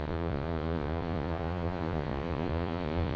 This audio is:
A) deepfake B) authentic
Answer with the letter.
A